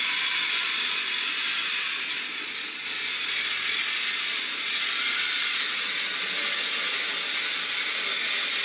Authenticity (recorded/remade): recorded